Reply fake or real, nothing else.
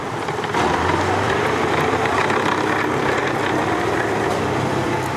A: fake